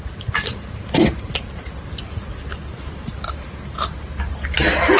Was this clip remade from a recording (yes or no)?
no